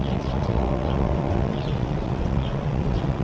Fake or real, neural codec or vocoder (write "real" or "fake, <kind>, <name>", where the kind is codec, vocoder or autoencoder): fake, vocoder, WaveNeXt